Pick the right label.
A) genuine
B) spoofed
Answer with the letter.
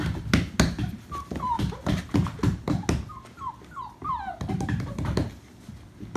A